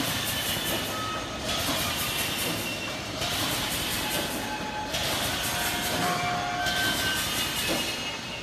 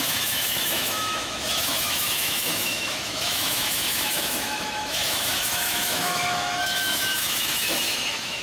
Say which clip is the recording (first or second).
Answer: first